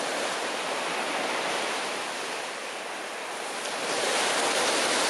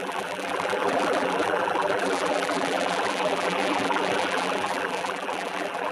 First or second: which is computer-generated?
second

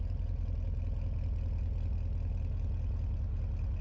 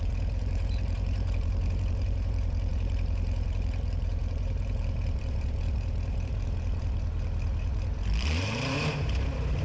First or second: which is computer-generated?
second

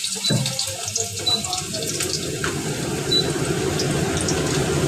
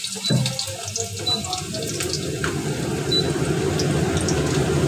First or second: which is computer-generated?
first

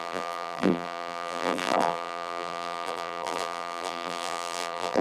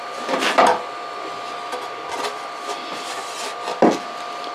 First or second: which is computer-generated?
first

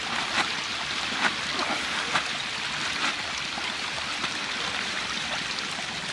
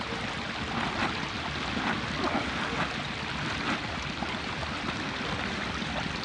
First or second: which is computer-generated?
first